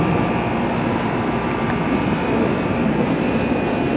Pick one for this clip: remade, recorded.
recorded